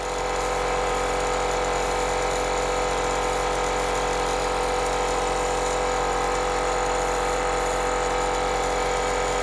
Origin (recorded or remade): recorded